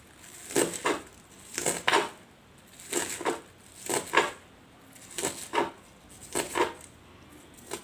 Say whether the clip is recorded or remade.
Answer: recorded